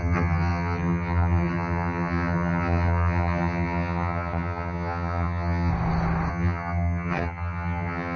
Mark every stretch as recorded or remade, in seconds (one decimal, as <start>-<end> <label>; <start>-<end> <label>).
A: 0.0-5.7 remade; 5.7-6.3 recorded; 6.3-8.2 remade